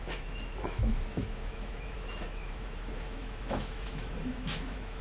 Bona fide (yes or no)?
no